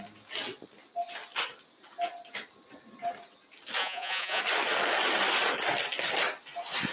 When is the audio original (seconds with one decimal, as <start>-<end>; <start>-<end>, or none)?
0.0-3.8; 4.4-6.9